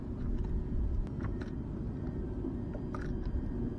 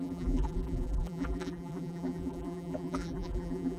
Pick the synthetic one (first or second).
second